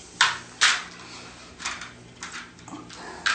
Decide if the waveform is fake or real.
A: real